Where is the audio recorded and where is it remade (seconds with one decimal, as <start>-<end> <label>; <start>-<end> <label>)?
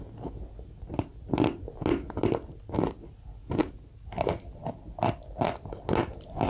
0.0-3.6 recorded; 3.6-4.3 remade; 4.3-6.5 recorded